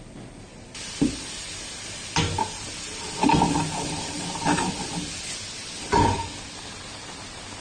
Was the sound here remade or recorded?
recorded